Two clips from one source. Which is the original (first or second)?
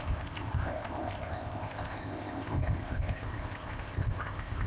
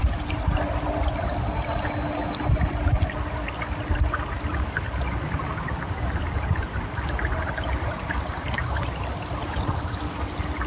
second